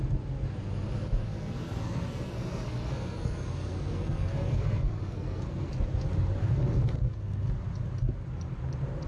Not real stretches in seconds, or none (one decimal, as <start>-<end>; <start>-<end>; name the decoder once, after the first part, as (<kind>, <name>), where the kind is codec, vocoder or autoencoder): 1.2-5.7 (codec, SNAC); 6.4-7.5